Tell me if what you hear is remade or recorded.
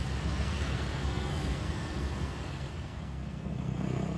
remade